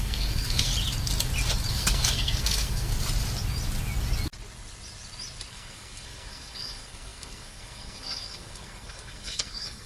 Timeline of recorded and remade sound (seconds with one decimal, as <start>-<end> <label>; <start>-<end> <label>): 0.0-0.7 remade; 0.7-1.7 recorded; 1.7-2.9 remade; 2.9-5.5 recorded; 5.5-9.9 remade